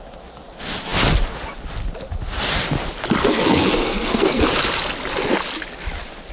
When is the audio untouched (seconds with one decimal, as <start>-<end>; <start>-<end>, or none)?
0.0-3.2; 4.4-6.3